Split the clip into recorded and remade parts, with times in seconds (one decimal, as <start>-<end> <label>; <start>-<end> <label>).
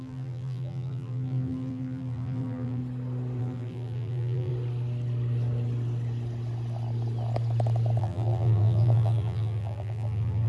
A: 0.0-2.8 remade; 2.8-3.4 recorded; 3.4-4.5 remade; 4.5-8.0 recorded; 8.0-10.5 remade